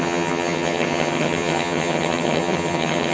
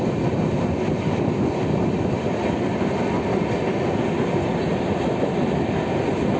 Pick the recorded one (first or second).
second